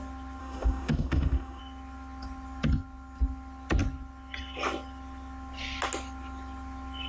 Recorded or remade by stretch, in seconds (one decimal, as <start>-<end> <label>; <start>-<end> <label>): 0.0-0.4 recorded; 0.4-1.6 remade; 1.6-7.1 recorded